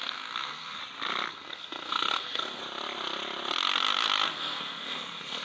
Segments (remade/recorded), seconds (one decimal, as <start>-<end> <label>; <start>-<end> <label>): 0.0-0.8 remade; 0.8-1.3 recorded; 1.3-2.6 remade; 2.6-4.3 recorded; 4.3-5.4 remade